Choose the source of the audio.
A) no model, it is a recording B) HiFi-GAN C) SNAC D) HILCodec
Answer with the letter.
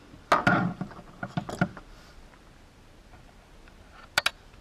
A